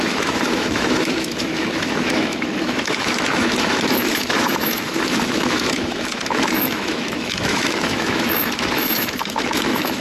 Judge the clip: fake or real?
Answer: fake